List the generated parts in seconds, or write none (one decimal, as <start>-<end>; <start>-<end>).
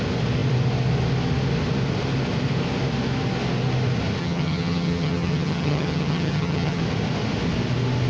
4.2-6.8